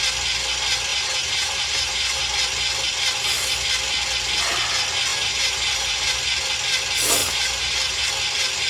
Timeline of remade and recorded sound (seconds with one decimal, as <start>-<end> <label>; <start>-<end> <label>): 0.0-0.9 recorded; 0.9-2.2 remade; 2.2-5.1 recorded; 5.1-6.1 remade; 6.1-7.2 recorded; 7.2-8.0 remade; 8.0-8.7 recorded